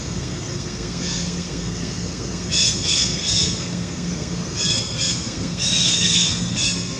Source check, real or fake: fake